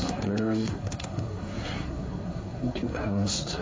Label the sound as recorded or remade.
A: remade